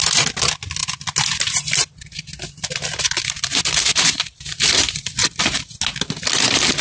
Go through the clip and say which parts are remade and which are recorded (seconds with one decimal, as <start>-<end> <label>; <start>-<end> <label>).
0.0-6.8 recorded